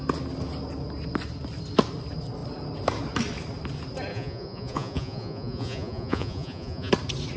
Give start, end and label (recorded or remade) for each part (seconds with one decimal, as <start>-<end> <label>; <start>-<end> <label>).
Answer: 0.0-4.1 recorded; 4.1-6.9 remade; 6.9-7.4 recorded